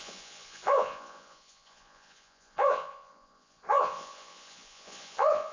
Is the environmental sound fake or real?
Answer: fake